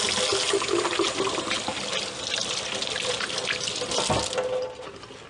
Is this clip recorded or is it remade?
recorded